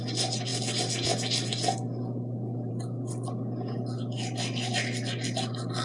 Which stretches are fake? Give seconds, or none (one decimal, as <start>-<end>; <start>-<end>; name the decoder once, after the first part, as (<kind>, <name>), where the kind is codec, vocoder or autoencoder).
none